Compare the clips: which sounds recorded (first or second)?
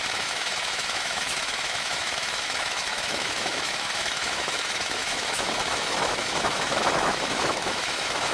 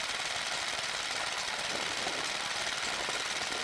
second